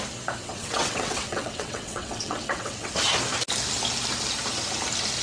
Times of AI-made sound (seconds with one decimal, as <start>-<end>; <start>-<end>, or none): 0.4-2.9